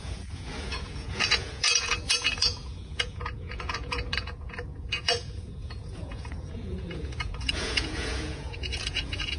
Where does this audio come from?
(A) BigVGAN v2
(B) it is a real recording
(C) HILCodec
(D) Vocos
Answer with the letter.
D